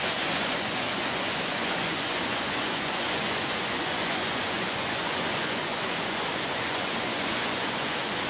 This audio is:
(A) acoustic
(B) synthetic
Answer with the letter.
B